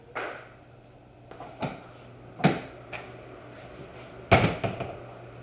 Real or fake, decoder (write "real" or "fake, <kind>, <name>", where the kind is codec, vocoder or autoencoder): real